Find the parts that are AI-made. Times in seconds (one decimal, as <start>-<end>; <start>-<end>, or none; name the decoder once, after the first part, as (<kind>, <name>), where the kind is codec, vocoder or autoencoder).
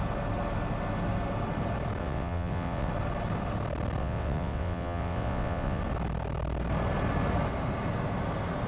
2.0-2.9 (vocoder, WaveNeXt); 4.0-5.8